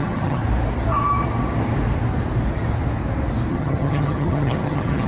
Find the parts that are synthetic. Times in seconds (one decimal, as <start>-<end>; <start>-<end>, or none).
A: 0.0-0.4; 3.5-5.1